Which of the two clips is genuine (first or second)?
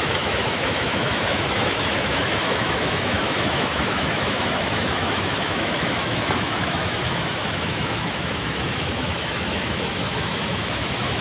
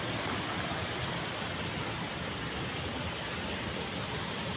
second